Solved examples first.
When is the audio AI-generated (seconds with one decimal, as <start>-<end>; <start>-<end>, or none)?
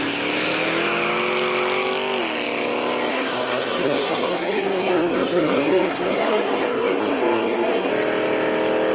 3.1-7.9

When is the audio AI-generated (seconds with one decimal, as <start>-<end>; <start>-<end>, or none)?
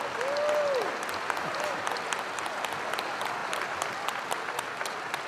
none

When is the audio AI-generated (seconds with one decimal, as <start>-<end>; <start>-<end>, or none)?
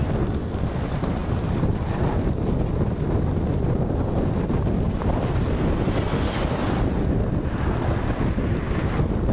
none